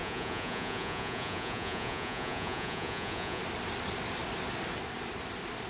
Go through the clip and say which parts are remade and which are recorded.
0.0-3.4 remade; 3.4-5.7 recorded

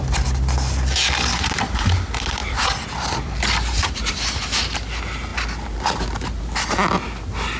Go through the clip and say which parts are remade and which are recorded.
0.0-2.4 recorded; 2.4-4.1 remade; 4.1-7.6 recorded

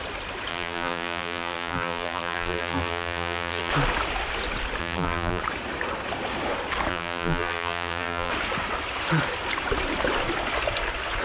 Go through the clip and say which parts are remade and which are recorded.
0.0-0.5 recorded; 0.5-3.7 remade; 3.7-4.8 recorded; 4.8-5.4 remade; 5.4-6.9 recorded; 6.9-8.3 remade; 8.3-11.2 recorded

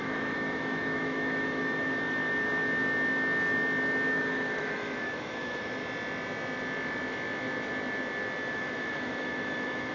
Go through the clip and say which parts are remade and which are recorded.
0.0-1.9 remade; 1.9-4.1 recorded; 4.1-5.8 remade; 5.8-8.5 recorded; 8.5-9.9 remade

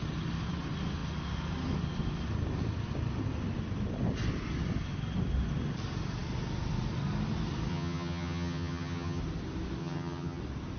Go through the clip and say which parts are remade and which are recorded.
0.0-7.7 recorded; 7.7-9.2 remade; 9.2-9.8 recorded; 9.8-10.4 remade; 10.4-10.8 recorded

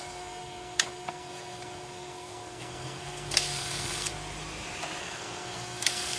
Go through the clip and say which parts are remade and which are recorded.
0.0-4.1 remade; 4.1-5.0 recorded; 5.0-6.2 remade